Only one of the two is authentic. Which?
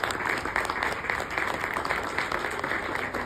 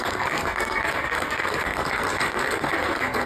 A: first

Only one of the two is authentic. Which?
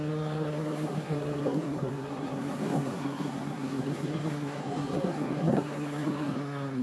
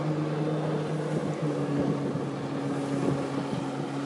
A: second